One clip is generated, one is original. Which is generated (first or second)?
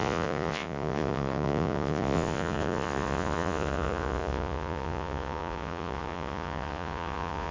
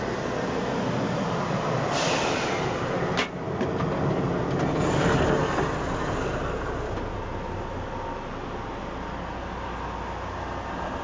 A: first